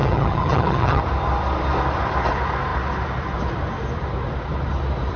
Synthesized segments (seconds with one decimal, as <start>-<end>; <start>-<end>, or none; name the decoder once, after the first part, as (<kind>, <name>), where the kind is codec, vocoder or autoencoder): 0.0-1.0 (vocoder, HiFi-GAN)